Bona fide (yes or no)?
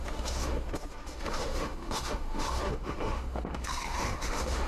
no